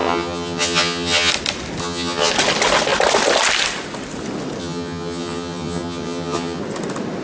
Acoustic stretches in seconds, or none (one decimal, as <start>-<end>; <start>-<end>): 1.3-1.8; 2.3-4.6; 6.6-7.2